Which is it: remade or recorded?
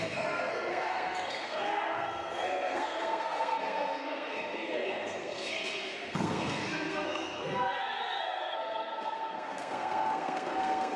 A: remade